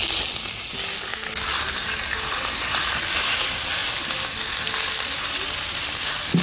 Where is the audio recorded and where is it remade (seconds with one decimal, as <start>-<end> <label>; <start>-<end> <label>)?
0.0-6.4 recorded